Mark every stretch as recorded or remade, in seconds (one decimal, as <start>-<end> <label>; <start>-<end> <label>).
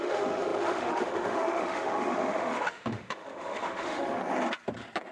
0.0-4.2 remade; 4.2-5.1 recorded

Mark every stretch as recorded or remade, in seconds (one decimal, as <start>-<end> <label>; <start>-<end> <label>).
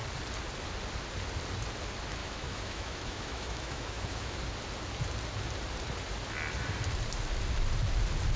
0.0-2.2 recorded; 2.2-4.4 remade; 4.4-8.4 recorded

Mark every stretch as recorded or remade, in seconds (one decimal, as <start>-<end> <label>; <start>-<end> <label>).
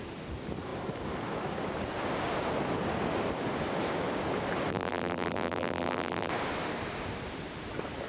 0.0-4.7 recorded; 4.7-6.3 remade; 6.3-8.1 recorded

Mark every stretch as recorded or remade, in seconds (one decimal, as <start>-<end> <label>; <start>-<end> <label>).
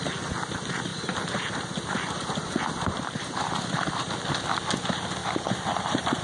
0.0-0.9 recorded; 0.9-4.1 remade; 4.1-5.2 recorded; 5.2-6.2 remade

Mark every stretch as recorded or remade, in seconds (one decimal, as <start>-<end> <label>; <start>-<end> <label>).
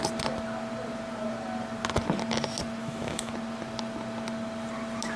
0.0-2.8 recorded; 2.8-3.3 remade; 3.3-5.2 recorded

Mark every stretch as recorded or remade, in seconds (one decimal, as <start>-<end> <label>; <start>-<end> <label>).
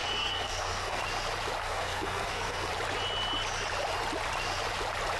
0.0-1.0 remade; 1.0-1.6 recorded; 1.6-2.7 remade; 2.7-5.2 recorded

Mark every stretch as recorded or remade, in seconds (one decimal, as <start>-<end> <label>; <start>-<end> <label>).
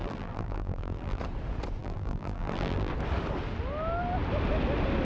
0.0-1.2 remade; 1.2-1.8 recorded; 1.8-2.9 remade; 2.9-5.0 recorded